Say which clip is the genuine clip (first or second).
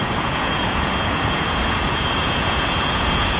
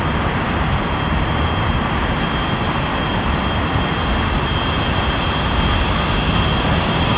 second